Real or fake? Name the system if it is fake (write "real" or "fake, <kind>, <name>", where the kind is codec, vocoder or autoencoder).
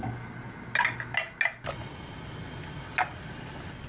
real